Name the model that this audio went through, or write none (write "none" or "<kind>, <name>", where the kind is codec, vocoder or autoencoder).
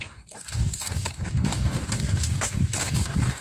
codec, DAC